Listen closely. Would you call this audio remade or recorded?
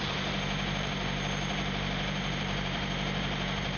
remade